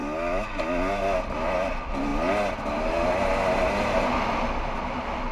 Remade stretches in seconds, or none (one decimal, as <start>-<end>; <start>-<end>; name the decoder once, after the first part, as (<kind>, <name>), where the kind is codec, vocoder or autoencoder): none